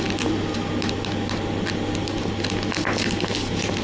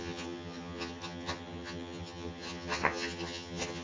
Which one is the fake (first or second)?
second